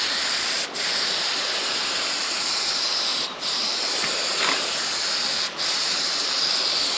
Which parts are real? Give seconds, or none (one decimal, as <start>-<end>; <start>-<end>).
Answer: 0.0-7.0